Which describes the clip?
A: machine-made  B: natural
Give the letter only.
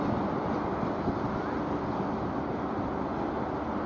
B